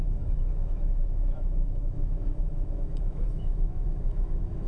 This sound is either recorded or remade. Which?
remade